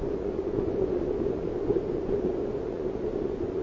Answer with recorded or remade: remade